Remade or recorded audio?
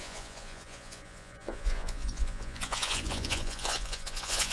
remade